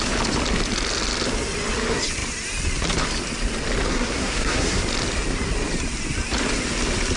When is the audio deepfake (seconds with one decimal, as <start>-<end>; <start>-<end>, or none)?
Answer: 3.9-4.8